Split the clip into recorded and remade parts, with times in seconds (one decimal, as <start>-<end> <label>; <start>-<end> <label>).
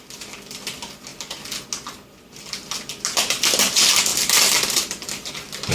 0.0-5.7 recorded